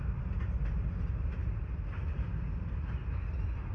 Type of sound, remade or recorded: recorded